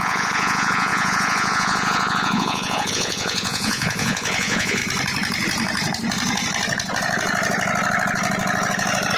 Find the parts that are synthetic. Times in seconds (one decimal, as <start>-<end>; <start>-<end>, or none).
0.0-4.8